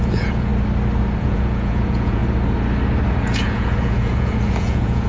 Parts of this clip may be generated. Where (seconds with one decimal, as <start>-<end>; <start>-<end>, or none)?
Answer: 0.0-0.5; 1.2-2.2; 3.1-5.1